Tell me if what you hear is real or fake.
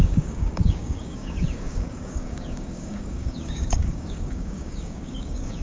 fake